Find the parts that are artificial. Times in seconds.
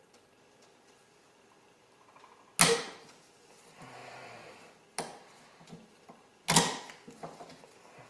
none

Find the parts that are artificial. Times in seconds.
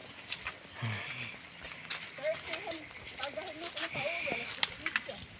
none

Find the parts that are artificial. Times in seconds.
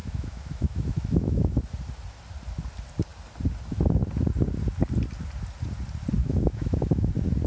0.0-1.6 (autoencoder, DAC-VAE); 6.2-7.1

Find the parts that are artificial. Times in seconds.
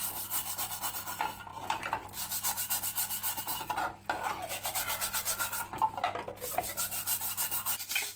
none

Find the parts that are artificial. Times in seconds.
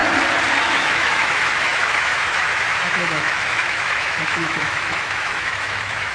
0.6-6.1 (autoencoder, DAC-VAE)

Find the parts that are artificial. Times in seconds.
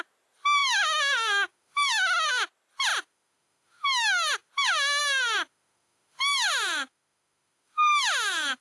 0.6-2.3 (autoencoder, DAC-VAE); 2.9-4.5; 5.0-8.6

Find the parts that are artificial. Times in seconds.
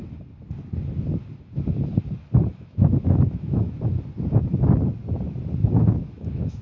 2.5-3.7 (autoencoder, DAC-VAE); 5.6-6.6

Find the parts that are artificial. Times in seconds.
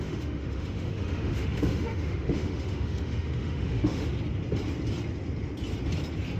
0.0-4.1 (autoencoder, DAC-VAE)